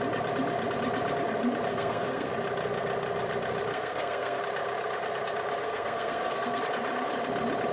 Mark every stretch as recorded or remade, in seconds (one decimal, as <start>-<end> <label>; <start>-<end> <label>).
0.0-1.7 recorded; 1.7-2.3 remade; 2.3-3.7 recorded; 3.7-4.4 remade; 4.4-5.6 recorded; 5.6-6.6 remade; 6.6-7.7 recorded